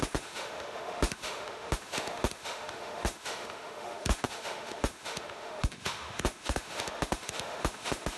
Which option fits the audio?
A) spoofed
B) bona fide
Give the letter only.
A